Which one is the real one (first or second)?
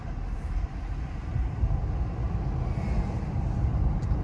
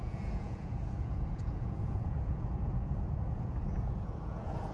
first